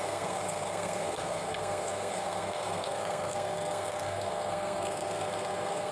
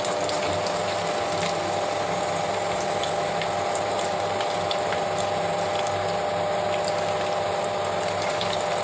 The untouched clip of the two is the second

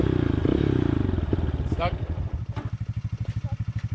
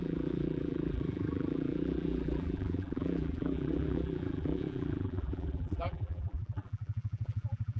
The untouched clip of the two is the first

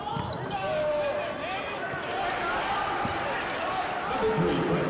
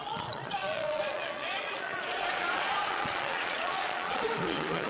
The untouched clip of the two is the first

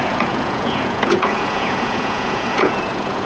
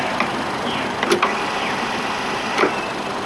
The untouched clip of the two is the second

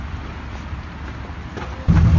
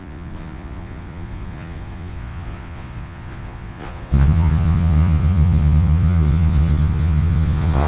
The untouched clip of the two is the first